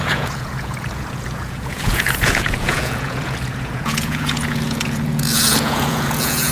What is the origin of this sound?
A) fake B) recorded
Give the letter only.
A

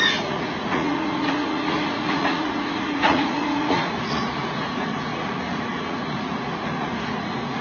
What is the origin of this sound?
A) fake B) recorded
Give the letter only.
A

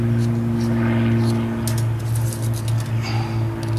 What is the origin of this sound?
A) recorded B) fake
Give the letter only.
A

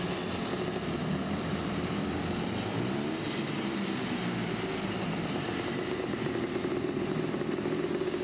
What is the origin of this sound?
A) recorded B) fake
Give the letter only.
A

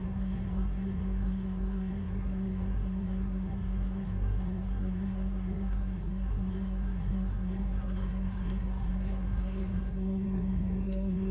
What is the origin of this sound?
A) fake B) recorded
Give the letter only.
A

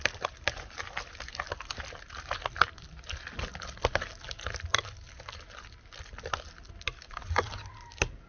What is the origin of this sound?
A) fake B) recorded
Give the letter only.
B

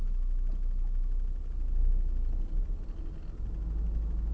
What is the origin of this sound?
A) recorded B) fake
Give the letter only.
A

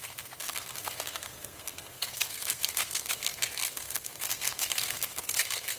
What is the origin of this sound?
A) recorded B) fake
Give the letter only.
B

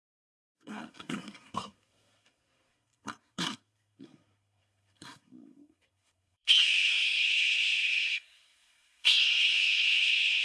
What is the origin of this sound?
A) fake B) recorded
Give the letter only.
A